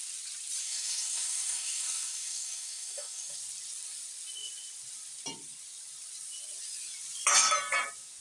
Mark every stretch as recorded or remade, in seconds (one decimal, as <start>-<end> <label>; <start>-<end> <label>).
0.0-0.6 recorded; 0.6-3.4 remade; 3.4-8.2 recorded